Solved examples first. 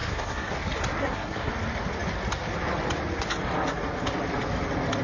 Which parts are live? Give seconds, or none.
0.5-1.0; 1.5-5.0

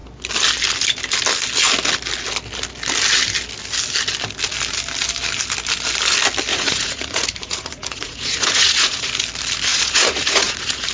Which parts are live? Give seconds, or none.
0.0-6.5; 9.1-9.7

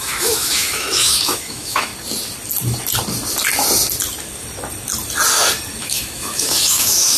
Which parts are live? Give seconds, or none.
1.9-5.8